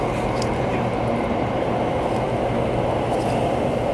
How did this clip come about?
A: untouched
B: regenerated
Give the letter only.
A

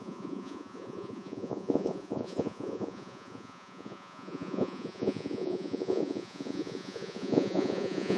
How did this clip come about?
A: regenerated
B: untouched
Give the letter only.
A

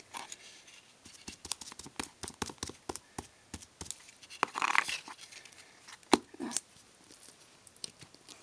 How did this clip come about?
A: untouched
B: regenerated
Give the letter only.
A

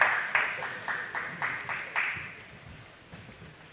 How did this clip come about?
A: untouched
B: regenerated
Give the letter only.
A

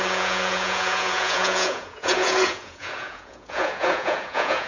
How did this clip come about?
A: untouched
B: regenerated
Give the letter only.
B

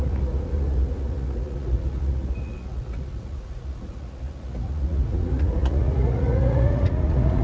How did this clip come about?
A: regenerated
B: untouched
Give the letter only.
A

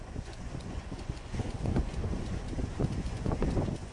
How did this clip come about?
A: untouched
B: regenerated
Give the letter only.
B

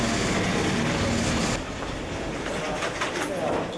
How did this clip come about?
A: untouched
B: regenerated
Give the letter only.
A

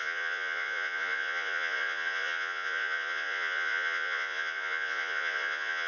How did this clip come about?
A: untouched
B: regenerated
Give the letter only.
B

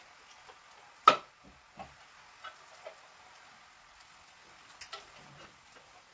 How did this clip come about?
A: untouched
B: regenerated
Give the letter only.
A